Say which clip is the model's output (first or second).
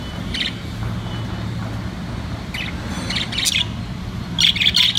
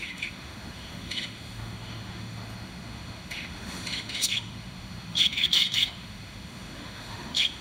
second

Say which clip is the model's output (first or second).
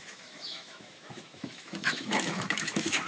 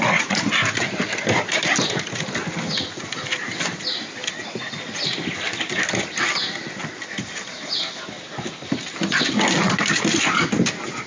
first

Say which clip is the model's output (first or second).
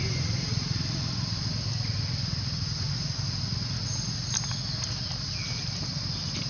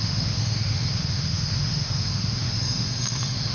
second